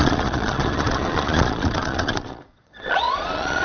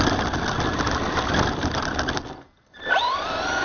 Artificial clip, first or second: first